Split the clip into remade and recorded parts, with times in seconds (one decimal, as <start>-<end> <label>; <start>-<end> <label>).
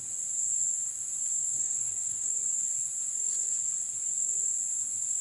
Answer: 0.0-1.4 recorded; 1.4-2.3 remade; 2.3-5.2 recorded